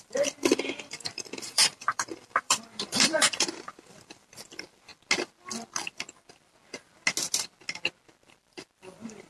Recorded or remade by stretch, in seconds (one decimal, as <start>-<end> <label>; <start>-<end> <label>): 0.0-4.9 remade; 4.9-8.3 recorded; 8.3-9.3 remade